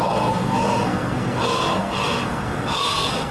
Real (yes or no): no